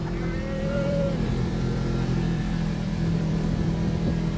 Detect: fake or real fake